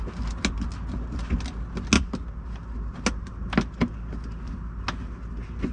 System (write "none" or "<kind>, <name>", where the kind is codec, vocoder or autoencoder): none